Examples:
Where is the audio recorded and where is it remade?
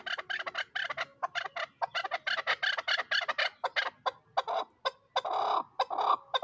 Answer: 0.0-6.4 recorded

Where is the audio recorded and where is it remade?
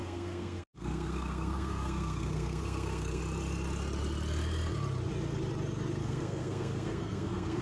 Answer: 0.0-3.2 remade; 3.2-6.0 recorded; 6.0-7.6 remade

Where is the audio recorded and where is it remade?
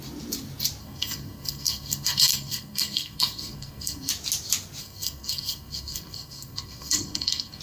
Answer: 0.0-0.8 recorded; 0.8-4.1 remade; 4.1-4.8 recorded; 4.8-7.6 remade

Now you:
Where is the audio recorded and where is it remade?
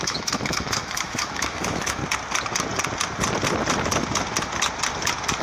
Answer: 0.0-2.0 remade; 2.0-5.4 recorded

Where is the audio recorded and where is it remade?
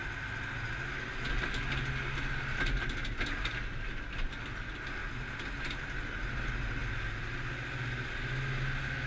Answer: 0.0-9.1 recorded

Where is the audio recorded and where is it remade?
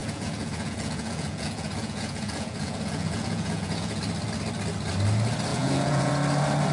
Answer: 0.0-4.0 remade; 4.0-5.5 recorded; 5.5-6.1 remade; 6.1-6.7 recorded